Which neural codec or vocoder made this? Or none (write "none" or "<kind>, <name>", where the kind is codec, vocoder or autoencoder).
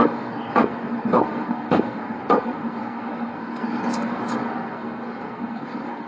codec, SNAC